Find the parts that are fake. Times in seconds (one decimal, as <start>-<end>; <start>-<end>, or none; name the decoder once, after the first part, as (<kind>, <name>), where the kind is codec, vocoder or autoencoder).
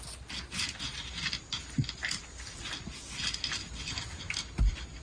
none